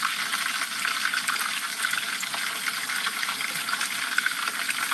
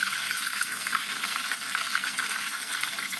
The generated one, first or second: second